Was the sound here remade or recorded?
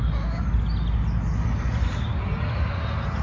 recorded